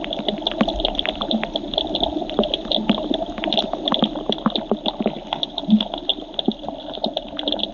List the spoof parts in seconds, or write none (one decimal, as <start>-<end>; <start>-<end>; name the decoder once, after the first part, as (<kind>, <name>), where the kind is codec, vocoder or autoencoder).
none